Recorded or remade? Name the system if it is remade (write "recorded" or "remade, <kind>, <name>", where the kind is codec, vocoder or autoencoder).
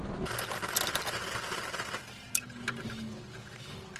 recorded